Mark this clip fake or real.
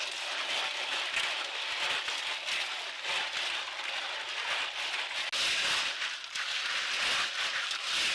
real